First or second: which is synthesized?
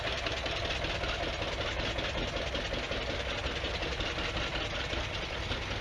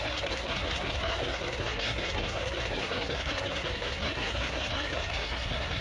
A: second